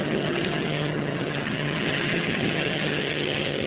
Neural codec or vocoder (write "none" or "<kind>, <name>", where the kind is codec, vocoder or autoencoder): vocoder, HiFi-GAN